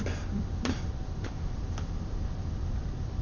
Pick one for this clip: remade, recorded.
remade